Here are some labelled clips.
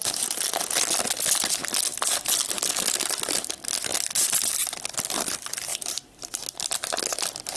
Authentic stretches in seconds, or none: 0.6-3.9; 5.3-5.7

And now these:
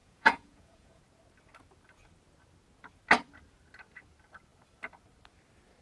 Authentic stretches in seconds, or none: 1.0-5.8